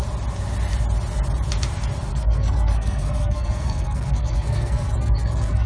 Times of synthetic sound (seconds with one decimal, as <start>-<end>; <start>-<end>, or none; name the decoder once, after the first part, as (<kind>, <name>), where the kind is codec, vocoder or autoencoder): 2.1-5.7 (codec, SNAC)